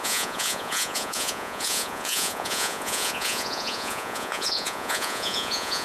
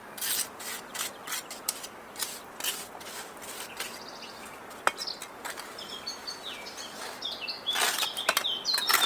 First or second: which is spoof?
first